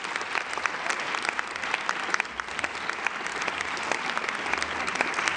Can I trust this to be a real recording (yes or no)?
yes